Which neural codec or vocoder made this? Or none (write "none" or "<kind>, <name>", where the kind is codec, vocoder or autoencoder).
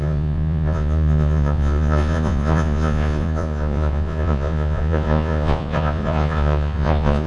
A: vocoder, Vocos